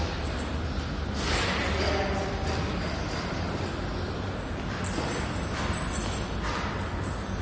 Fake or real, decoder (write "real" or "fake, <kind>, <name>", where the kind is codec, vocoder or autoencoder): real